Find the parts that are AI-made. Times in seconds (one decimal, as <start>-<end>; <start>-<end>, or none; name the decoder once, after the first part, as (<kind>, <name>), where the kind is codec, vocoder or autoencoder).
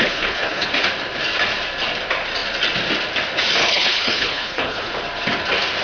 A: 0.0-0.7 (codec, HILCodec); 3.6-4.9